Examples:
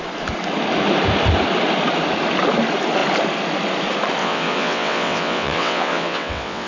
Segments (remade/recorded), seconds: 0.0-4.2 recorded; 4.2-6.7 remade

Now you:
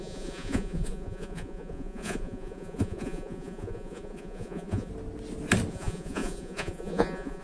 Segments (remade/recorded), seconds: 0.0-4.9 remade; 4.9-5.7 recorded; 5.7-7.4 remade

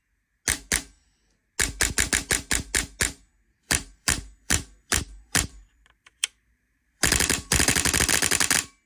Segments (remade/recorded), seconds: 0.0-3.6 recorded; 3.6-7.7 remade; 7.7-8.9 recorded

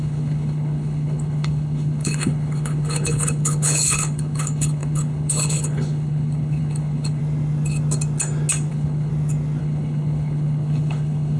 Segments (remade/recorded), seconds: 0.0-7.2 remade; 7.2-8.7 recorded; 8.7-9.1 remade; 9.1-9.6 recorded; 9.6-11.4 remade